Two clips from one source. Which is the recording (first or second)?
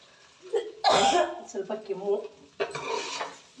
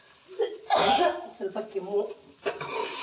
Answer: first